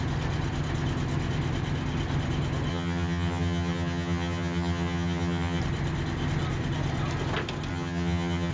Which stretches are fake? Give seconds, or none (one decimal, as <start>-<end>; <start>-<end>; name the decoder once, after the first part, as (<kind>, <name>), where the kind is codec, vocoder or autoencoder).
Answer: 2.7-5.6 (vocoder, HiFi-GAN); 7.7-8.5